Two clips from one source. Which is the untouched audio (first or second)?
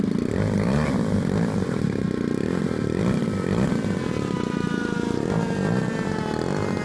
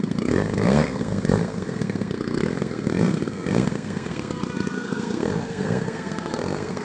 first